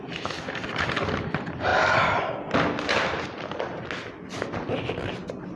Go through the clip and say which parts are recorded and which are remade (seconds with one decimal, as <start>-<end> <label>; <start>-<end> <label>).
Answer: 0.0-5.6 recorded